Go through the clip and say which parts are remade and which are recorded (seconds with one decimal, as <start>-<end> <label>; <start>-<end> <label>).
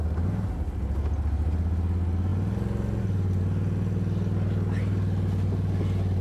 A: 0.0-6.2 recorded